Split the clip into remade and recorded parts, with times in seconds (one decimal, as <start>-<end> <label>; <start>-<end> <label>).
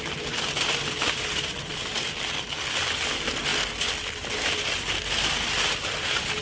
0.0-6.4 recorded